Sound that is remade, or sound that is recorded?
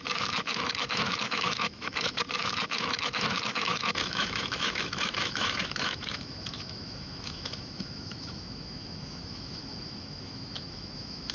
remade